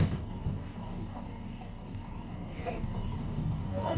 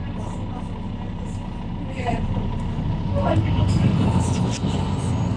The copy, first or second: first